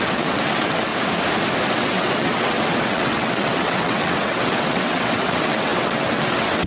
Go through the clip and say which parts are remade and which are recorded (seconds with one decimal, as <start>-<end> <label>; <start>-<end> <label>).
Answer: 0.0-0.9 remade; 0.9-1.7 recorded; 1.7-6.7 remade